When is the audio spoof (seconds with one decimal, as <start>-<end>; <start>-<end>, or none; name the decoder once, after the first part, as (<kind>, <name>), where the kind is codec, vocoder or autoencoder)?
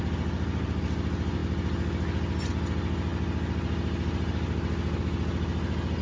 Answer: none